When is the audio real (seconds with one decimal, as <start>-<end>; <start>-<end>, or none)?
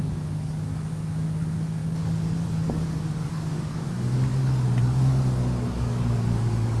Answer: none